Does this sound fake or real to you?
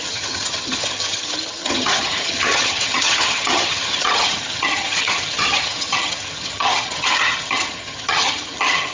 fake